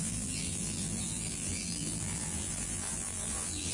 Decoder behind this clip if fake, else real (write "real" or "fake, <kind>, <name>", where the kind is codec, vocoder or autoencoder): fake, vocoder, BigVGAN v2